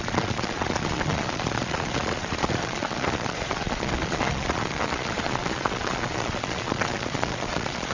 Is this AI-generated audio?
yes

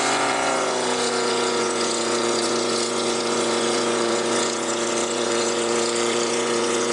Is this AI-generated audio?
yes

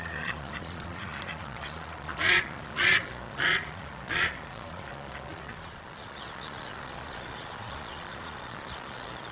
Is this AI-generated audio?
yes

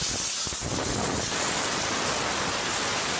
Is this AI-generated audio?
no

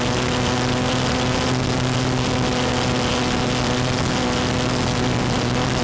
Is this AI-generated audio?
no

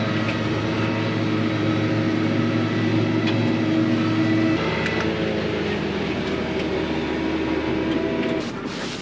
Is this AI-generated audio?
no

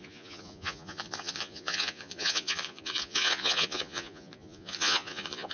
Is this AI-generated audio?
yes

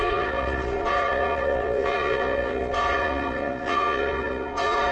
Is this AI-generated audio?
yes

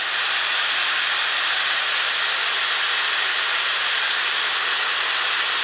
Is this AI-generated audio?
no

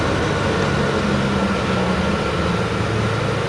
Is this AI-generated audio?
no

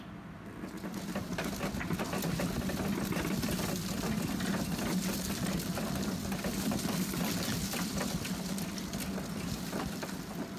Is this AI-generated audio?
no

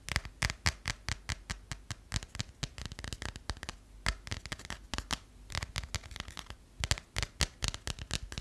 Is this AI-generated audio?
no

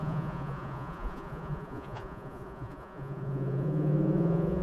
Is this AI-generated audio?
yes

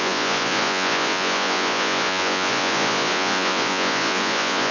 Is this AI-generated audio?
yes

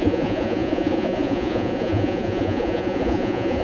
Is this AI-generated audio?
yes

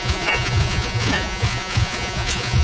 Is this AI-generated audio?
yes